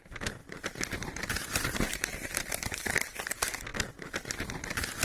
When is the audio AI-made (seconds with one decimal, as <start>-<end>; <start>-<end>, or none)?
0.4-2.6